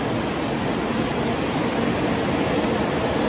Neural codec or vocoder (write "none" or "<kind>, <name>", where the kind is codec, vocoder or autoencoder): none